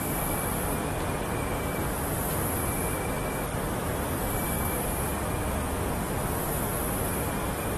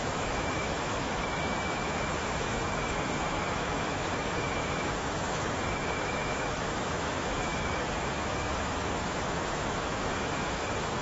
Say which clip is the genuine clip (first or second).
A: first